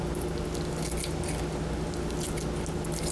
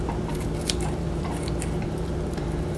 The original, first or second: first